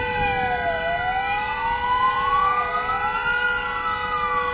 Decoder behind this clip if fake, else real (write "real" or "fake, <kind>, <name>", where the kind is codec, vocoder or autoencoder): real